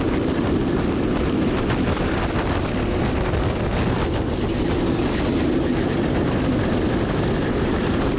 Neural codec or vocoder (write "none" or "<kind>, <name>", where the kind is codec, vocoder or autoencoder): none